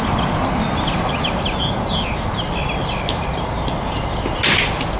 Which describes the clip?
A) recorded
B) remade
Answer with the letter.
A